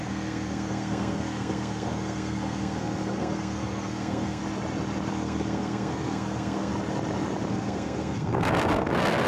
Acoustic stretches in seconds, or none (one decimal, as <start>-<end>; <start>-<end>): 4.4-5.1; 6.7-7.5